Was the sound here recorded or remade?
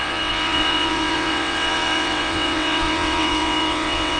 remade